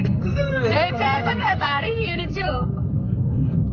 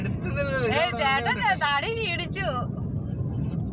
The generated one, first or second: first